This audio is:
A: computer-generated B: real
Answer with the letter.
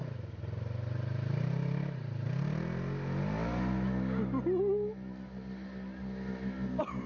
B